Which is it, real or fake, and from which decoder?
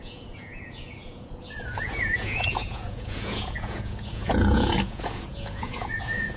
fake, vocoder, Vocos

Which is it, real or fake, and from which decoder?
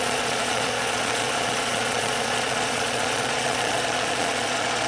fake, vocoder, Vocos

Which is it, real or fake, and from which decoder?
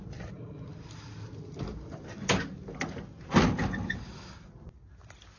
real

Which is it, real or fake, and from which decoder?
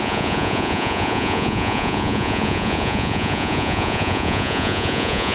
fake, vocoder, Vocos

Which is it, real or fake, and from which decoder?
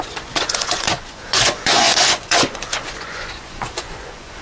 fake, vocoder, Vocos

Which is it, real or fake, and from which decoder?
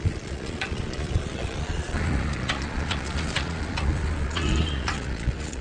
fake, vocoder, Vocos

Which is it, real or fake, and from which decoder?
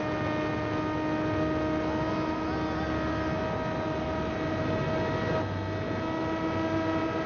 real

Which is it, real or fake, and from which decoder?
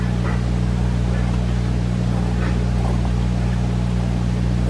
real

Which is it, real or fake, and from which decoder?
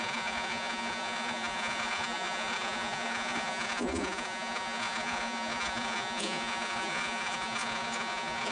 fake, vocoder, Vocos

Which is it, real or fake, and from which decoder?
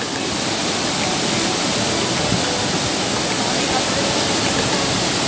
real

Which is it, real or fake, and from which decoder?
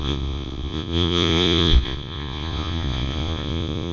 fake, vocoder, Vocos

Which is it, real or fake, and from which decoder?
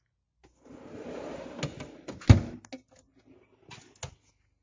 real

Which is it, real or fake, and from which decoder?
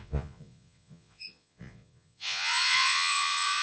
fake, vocoder, Vocos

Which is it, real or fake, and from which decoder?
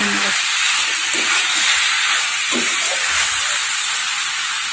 real